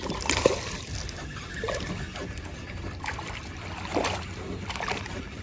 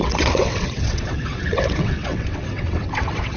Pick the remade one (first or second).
second